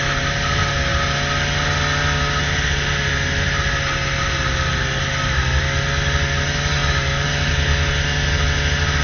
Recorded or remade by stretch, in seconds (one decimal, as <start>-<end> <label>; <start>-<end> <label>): 0.0-9.0 recorded

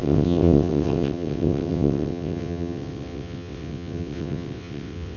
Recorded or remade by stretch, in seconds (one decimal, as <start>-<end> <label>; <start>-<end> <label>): 0.0-5.2 remade

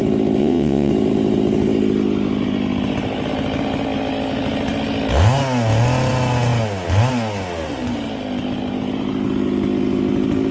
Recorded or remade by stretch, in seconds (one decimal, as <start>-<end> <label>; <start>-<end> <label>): 0.0-0.4 recorded; 0.4-0.9 remade; 0.9-10.5 recorded

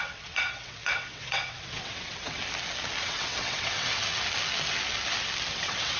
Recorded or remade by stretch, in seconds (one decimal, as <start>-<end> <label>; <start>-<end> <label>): 0.0-2.4 remade; 2.4-3.0 recorded; 3.0-3.9 remade; 3.9-5.5 recorded; 5.5-6.0 remade

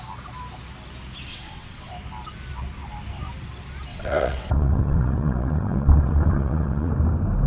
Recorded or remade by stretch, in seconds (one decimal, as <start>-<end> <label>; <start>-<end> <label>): 0.0-1.3 recorded; 1.3-1.9 remade; 1.9-3.9 recorded; 3.9-6.9 remade; 6.9-7.5 recorded

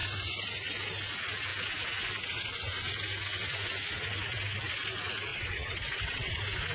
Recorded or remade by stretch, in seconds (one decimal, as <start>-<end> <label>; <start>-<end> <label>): 0.0-5.3 recorded; 5.3-6.3 remade; 6.3-6.7 recorded